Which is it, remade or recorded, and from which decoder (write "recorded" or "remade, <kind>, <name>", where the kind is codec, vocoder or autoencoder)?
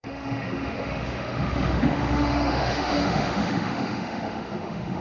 remade, autoencoder, DAC-VAE